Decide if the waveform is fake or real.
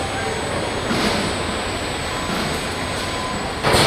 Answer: real